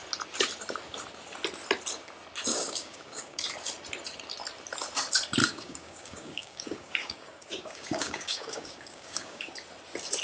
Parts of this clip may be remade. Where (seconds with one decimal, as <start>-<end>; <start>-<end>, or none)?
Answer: 2.5-3.5; 5.4-9.5